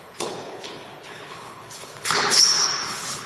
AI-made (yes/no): yes